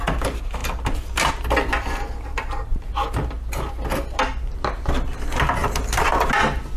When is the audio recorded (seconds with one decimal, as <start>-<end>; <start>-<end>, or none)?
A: 0.0-6.8